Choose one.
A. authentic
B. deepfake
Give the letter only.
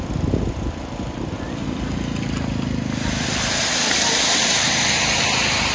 A